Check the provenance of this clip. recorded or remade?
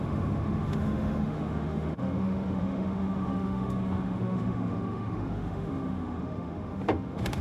remade